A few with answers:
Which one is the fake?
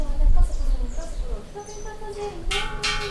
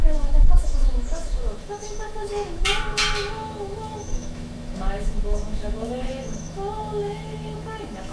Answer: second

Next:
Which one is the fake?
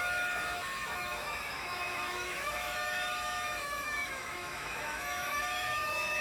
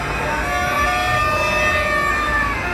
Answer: first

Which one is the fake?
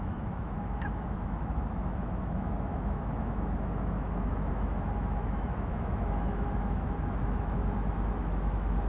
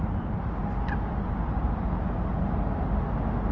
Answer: first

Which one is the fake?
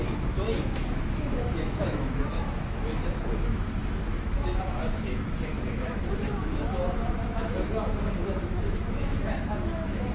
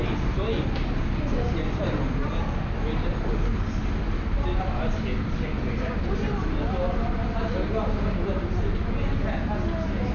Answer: first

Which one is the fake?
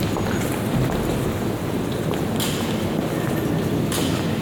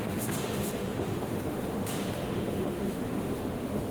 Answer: second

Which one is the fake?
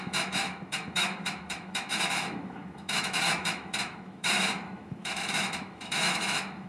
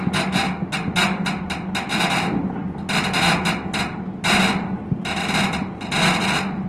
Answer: first